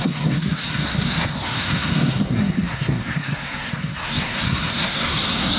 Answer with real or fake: fake